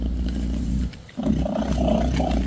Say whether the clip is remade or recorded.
recorded